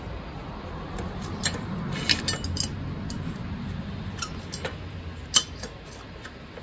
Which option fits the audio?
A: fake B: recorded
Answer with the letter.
B